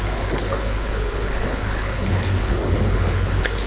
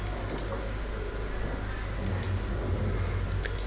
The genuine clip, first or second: second